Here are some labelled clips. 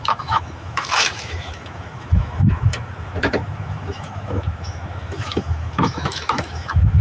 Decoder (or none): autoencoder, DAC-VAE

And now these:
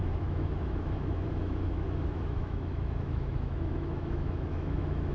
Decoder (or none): autoencoder, DAC-VAE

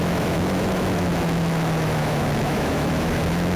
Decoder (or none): autoencoder, DAC-VAE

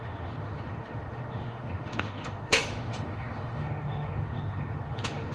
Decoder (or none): autoencoder, DAC-VAE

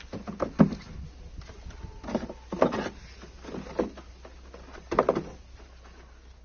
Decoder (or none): none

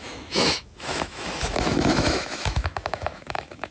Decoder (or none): autoencoder, DAC-VAE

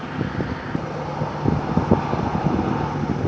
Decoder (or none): none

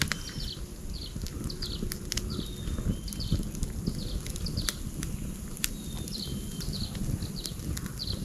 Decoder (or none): none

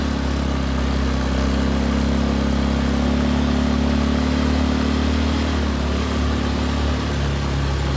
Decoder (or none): none